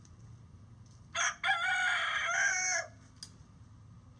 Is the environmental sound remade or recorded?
recorded